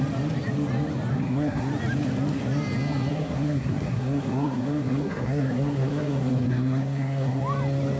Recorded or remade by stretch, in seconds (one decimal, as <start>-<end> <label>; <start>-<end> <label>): 0.0-1.1 recorded; 1.1-1.7 remade; 1.7-3.1 recorded; 3.1-7.4 remade; 7.4-8.0 recorded